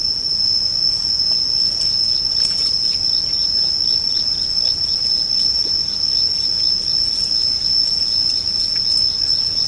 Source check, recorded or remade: recorded